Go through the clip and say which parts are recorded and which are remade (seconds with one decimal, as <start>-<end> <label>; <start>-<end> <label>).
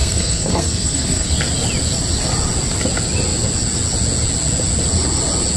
0.0-1.3 remade; 1.3-5.6 recorded